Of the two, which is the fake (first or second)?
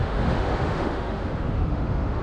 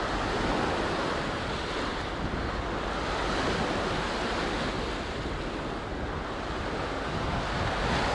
first